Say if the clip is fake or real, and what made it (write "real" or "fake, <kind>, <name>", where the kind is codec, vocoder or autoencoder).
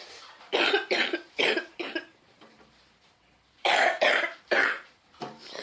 fake, vocoder, BigVGAN v2